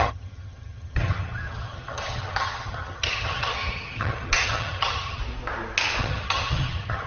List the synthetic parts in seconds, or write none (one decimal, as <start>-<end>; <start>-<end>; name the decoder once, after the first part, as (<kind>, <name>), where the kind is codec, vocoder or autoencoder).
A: 0.0-5.2 (vocoder, HiFi-GAN); 6.0-7.1